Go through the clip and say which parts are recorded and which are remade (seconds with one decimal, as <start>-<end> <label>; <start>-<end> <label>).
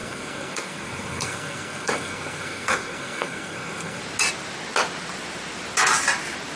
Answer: 0.0-4.0 remade; 4.0-6.6 recorded